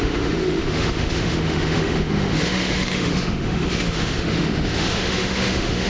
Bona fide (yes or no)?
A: no